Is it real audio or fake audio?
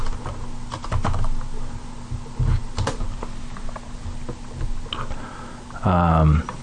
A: real